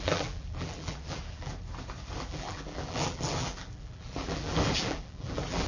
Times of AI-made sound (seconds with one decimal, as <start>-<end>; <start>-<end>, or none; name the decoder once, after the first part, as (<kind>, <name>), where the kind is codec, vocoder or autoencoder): 0.0-1.5 (vocoder, BigVGAN v2); 2.2-5.7